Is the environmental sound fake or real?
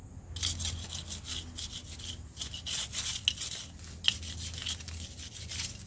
real